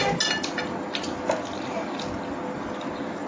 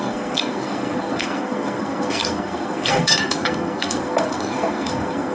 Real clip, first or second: first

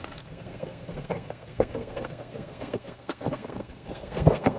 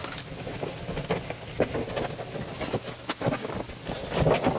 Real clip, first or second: second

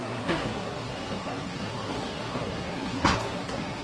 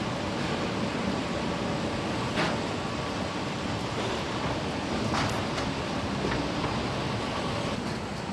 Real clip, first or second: second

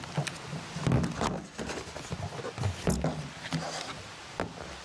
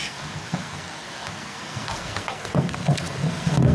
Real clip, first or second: first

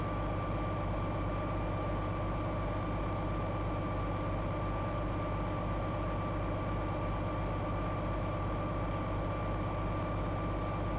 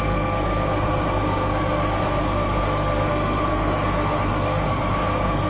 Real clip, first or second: first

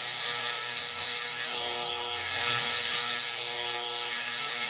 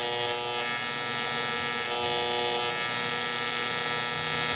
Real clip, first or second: second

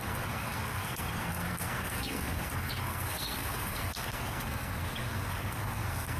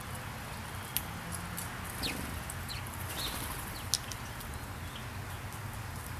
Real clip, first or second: second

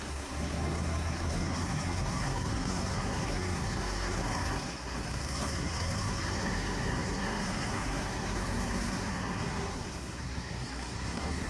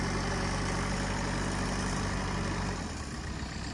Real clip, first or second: second